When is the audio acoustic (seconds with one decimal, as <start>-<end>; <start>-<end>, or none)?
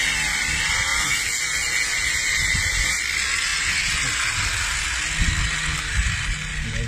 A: 0.9-2.3; 3.5-6.9